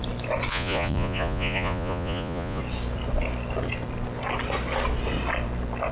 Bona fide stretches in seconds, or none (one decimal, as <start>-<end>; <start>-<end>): 0.0-0.5; 2.6-5.9